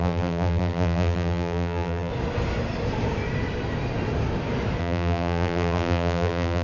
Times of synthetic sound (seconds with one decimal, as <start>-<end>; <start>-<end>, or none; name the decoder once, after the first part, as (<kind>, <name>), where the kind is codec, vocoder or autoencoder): 0.0-2.1 (vocoder, BigVGAN v2); 4.8-6.6